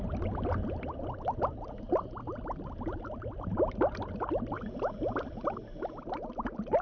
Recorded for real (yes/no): yes